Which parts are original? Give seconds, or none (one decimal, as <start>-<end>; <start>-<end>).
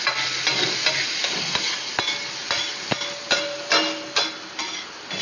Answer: 0.0-5.2